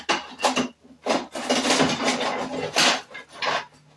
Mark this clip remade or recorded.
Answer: recorded